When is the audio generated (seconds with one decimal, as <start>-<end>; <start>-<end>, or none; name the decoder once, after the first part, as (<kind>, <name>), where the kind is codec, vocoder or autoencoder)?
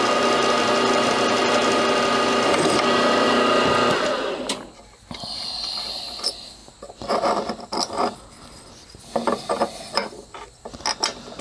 none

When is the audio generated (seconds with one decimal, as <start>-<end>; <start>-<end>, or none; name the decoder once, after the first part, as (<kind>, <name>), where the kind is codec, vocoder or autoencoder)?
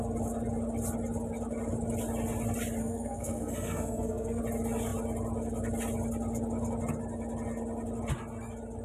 2.8-4.4 (codec, SNAC)